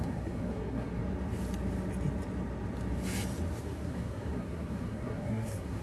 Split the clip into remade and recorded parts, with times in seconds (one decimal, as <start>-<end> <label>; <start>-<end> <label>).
0.0-1.0 remade; 1.0-3.6 recorded; 3.6-5.8 remade